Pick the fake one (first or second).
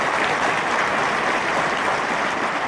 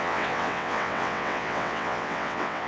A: second